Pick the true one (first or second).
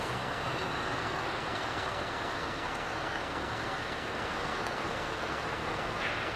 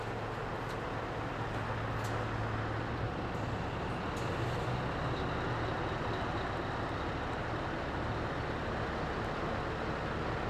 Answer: second